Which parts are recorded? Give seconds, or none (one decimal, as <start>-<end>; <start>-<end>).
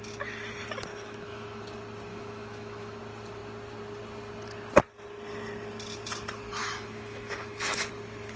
0.0-0.9; 1.6-2.1; 3.0-6.6; 7.9-8.4